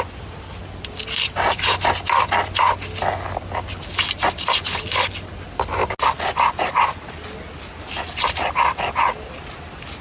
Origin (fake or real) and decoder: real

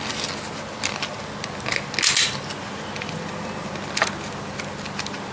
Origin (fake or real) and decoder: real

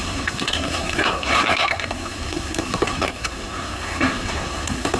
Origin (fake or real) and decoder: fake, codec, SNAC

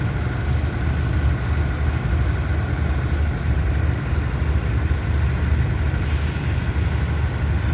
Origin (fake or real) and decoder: real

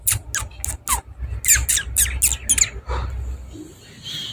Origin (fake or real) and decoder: real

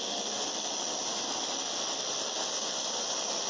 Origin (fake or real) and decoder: real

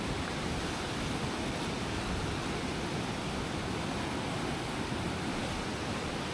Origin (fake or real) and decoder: real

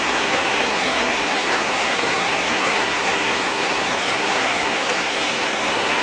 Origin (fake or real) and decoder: fake, codec, SNAC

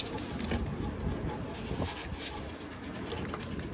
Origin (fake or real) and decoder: real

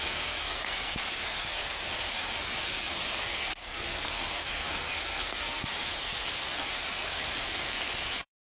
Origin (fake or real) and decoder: fake, codec, SNAC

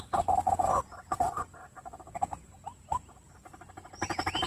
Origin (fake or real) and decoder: real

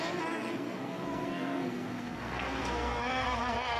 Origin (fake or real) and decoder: fake, codec, SNAC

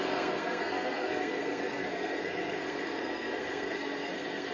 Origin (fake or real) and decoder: fake, codec, SNAC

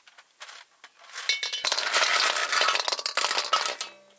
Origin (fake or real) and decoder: real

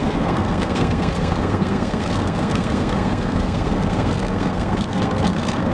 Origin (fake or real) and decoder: fake, codec, SNAC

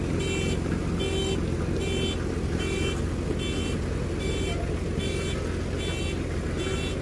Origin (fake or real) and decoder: real